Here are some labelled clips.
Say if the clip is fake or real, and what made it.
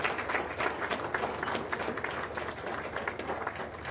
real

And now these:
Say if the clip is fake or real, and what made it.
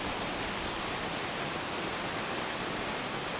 real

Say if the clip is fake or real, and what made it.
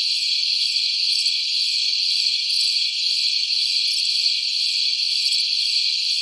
real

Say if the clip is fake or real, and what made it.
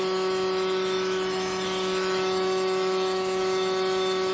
fake, autoencoder, DAC-VAE